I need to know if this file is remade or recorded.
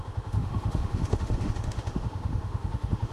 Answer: remade